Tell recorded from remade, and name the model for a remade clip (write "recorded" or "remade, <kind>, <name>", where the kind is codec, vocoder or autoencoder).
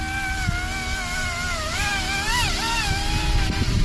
recorded